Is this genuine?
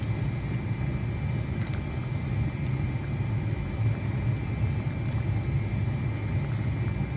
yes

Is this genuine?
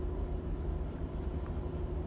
yes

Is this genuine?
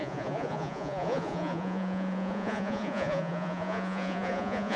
no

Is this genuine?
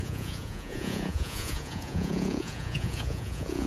no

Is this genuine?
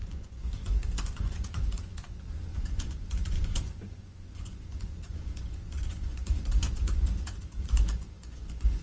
no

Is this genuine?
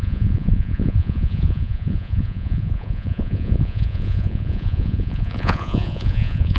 no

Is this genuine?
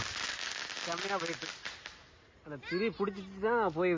yes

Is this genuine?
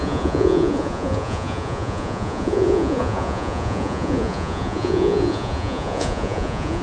no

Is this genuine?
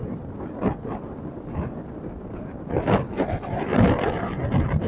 yes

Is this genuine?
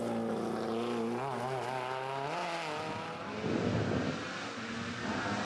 yes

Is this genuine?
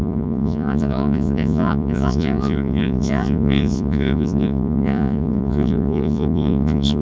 no